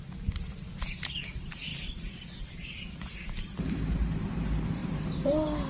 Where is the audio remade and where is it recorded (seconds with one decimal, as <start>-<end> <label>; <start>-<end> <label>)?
0.0-1.7 recorded; 1.7-4.3 remade; 4.3-4.8 recorded; 4.8-5.7 remade